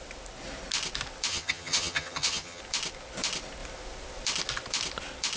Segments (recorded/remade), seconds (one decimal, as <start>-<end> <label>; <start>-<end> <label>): 0.0-1.3 recorded; 1.3-2.6 remade; 2.6-5.4 recorded